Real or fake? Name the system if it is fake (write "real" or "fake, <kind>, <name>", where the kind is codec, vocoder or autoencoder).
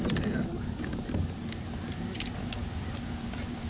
real